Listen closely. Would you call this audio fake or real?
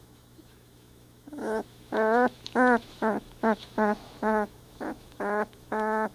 fake